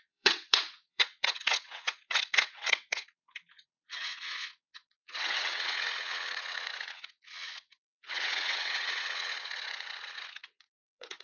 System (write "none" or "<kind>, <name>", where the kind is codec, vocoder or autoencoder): vocoder, WaveNeXt